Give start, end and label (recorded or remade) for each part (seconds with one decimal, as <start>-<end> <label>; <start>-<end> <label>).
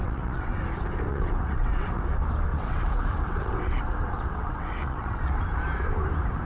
0.0-0.6 remade; 0.6-1.1 recorded; 1.1-2.0 remade; 2.0-2.5 recorded; 2.5-5.4 remade; 5.4-6.4 recorded